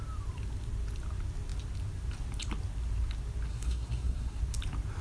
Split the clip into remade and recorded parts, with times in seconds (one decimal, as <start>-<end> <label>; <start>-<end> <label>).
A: 0.0-3.5 recorded; 3.5-4.4 remade; 4.4-5.0 recorded